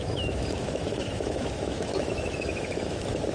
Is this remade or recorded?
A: remade